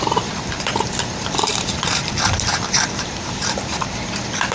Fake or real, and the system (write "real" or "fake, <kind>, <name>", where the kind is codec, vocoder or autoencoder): fake, vocoder, BigVGAN v2